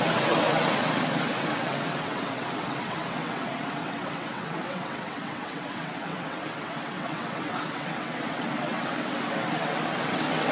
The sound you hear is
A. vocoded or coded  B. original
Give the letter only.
A